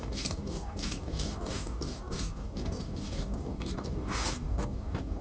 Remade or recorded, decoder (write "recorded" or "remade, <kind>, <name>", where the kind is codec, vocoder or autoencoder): remade, codec, DAC